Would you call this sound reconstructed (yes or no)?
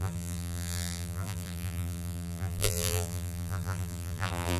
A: yes